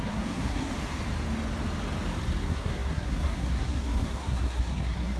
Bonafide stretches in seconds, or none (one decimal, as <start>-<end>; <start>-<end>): 0.7-2.4